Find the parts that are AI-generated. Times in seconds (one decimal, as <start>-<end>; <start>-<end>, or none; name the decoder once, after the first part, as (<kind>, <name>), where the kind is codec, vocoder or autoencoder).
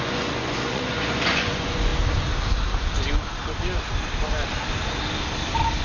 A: 0.0-1.9 (vocoder, Vocos)